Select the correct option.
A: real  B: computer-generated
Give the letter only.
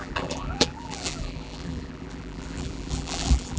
B